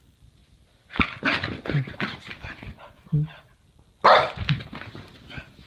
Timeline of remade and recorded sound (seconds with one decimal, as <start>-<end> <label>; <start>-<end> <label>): 0.0-5.7 recorded

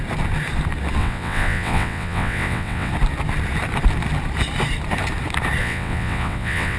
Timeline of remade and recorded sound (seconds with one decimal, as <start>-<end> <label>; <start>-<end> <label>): 0.0-1.0 recorded; 1.0-2.9 remade; 2.9-5.6 recorded; 5.6-6.8 remade